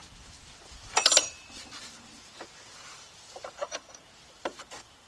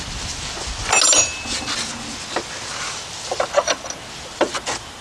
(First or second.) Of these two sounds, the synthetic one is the first